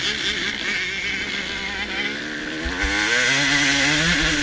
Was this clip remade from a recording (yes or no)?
no